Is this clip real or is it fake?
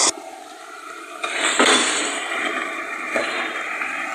fake